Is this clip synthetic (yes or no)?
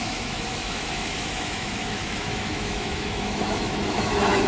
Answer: yes